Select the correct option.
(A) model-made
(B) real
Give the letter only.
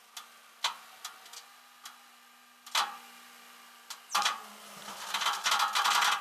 B